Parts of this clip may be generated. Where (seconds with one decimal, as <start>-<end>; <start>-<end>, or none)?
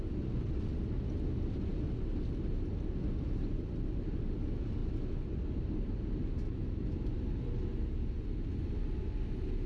none